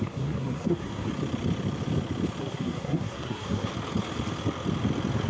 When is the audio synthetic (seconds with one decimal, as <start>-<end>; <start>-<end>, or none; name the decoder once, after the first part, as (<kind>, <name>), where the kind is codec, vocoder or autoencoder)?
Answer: 0.0-1.1 (codec, SNAC); 2.4-3.7